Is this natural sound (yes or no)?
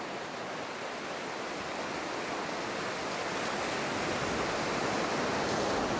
yes